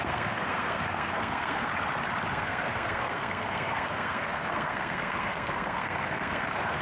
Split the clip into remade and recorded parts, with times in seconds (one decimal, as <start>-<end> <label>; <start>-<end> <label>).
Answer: 0.0-1.7 remade; 1.7-2.3 recorded; 2.3-6.8 remade